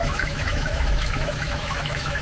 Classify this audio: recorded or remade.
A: remade